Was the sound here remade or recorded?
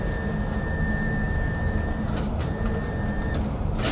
remade